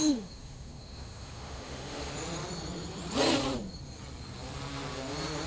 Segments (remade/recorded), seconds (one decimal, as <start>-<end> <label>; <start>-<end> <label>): 0.0-2.1 remade; 2.1-5.5 recorded